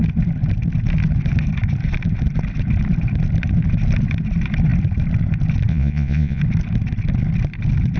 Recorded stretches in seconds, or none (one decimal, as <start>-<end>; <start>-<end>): 0.0-5.7; 6.4-8.0